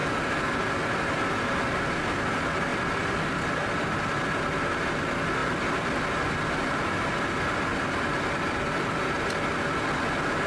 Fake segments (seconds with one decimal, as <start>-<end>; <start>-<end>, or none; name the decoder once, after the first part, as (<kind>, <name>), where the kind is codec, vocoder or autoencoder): 2.7-4.1 (vocoder, BigVGAN v2); 5.4-5.9